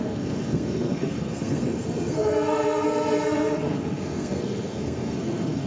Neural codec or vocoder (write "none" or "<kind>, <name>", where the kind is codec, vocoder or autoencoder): codec, SNAC